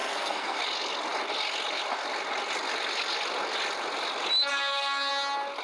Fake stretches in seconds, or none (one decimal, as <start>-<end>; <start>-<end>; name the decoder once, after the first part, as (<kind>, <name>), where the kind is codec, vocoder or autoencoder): 0.0-0.6 (codec, SNAC); 4.5-5.1